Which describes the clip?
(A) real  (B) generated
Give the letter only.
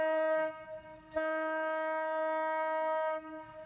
B